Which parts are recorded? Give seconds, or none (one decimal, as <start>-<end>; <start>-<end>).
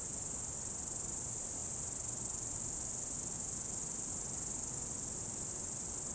0.0-6.1